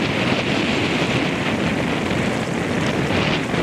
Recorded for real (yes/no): yes